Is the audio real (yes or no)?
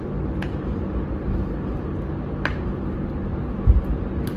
yes